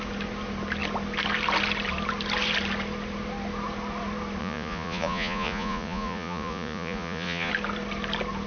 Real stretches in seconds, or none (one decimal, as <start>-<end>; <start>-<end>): 0.0-4.4; 7.5-8.5